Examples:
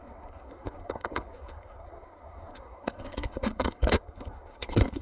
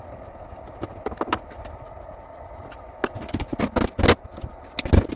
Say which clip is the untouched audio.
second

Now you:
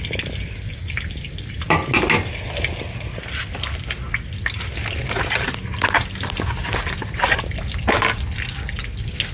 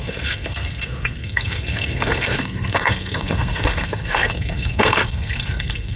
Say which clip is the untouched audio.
first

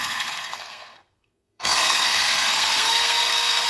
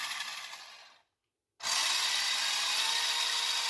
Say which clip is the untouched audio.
second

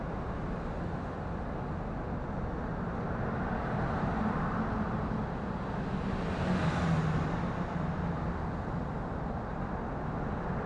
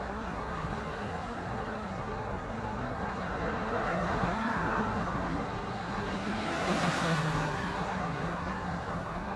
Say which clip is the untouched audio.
first